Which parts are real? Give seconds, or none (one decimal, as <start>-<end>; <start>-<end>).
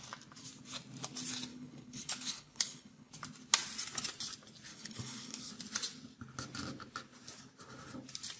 0.0-1.5; 3.1-4.7; 5.5-8.4